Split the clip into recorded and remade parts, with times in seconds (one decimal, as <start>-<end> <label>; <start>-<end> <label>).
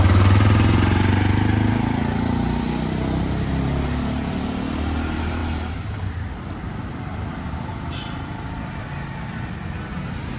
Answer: 0.0-10.4 recorded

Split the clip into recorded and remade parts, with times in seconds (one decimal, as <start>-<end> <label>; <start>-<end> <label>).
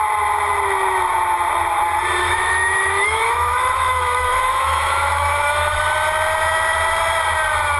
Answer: 0.0-2.2 recorded; 2.2-5.8 remade; 5.8-7.8 recorded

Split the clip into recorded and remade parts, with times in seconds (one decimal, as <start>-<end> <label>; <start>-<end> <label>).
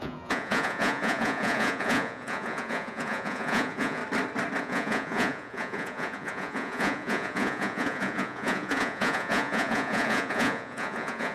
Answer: 0.0-4.0 remade; 4.0-4.6 recorded; 4.6-11.3 remade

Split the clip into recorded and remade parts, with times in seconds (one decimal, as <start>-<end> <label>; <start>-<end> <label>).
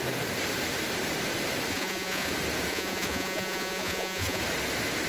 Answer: 0.0-1.7 recorded; 1.7-2.3 remade; 2.3-2.7 recorded; 2.7-4.4 remade; 4.4-5.1 recorded